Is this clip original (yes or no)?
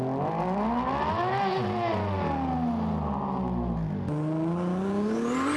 yes